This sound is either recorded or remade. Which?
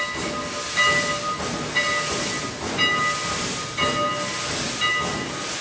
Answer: recorded